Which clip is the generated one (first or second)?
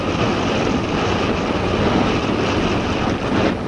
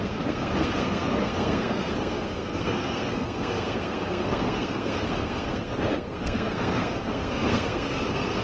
second